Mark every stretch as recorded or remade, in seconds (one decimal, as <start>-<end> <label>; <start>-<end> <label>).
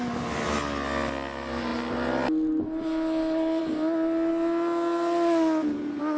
0.0-6.2 recorded